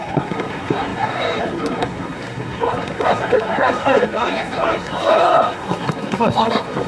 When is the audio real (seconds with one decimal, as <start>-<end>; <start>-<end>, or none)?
none